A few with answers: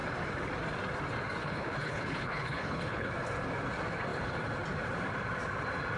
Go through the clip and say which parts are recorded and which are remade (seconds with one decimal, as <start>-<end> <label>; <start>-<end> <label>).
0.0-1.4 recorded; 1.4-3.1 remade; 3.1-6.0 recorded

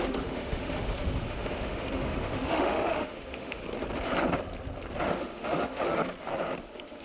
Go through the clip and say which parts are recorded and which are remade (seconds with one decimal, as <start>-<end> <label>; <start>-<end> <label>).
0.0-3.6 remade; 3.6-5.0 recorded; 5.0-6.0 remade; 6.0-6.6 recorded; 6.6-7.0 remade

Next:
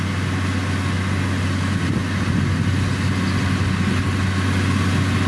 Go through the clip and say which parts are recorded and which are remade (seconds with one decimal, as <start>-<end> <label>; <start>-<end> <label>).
0.0-5.3 recorded

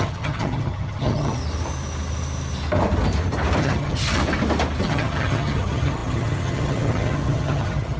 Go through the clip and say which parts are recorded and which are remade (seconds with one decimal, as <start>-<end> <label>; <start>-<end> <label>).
0.0-1.4 remade; 1.4-3.6 recorded; 3.6-4.2 remade; 4.2-4.8 recorded; 4.8-8.0 remade